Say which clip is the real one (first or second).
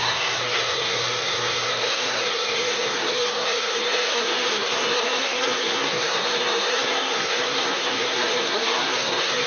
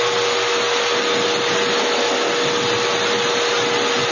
second